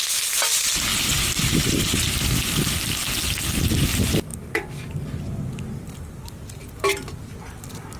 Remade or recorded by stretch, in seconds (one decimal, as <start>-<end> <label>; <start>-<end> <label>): 0.0-0.9 recorded; 0.9-2.5 remade; 2.5-8.0 recorded